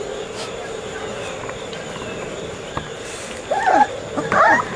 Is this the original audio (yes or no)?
yes